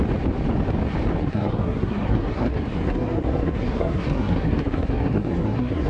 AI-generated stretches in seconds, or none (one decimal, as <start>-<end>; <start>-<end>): 1.2-5.9